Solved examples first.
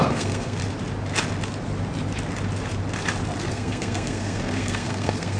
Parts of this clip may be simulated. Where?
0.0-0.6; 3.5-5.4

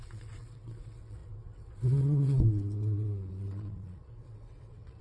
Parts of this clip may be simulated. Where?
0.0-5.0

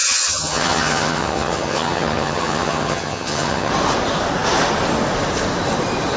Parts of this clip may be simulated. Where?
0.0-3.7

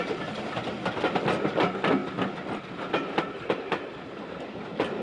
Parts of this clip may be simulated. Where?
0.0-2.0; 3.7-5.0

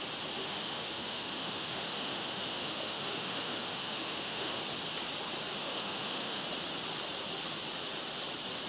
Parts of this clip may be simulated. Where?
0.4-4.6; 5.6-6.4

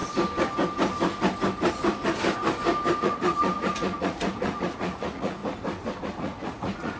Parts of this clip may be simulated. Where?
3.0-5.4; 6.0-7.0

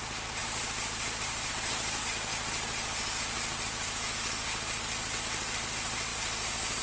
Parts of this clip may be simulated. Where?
0.0-2.3; 5.2-6.8

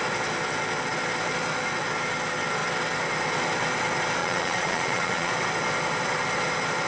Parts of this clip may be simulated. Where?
4.2-5.3